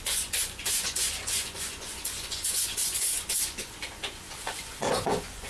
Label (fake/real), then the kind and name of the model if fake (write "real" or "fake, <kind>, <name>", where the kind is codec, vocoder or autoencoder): fake, vocoder, Vocos